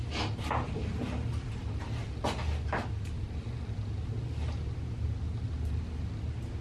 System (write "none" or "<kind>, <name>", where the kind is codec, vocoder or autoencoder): none